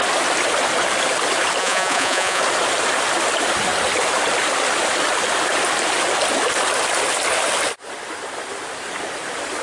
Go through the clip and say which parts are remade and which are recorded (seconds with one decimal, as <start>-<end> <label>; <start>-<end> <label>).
0.0-1.6 recorded; 1.6-2.4 remade; 2.4-9.6 recorded